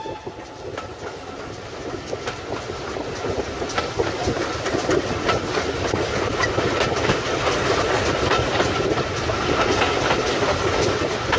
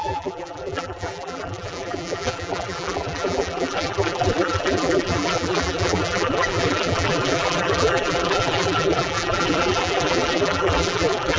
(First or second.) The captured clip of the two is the first